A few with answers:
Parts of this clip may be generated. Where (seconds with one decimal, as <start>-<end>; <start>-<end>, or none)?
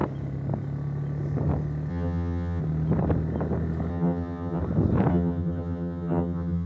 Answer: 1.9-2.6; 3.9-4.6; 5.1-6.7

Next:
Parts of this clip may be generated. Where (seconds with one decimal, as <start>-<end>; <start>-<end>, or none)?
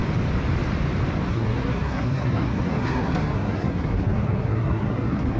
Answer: 1.3-5.4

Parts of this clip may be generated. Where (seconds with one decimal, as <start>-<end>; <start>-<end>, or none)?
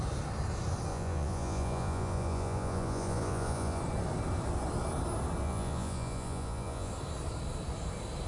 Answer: 0.9-3.8; 5.4-6.9